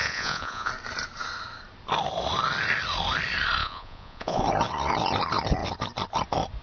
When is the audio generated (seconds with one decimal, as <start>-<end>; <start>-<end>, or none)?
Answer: 0.0-0.7; 3.6-4.4